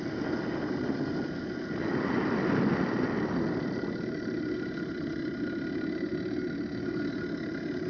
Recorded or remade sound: recorded